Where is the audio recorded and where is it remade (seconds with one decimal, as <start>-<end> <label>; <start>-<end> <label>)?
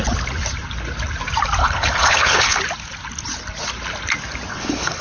0.0-1.6 recorded; 1.6-2.6 remade; 2.6-4.5 recorded; 4.5-5.0 remade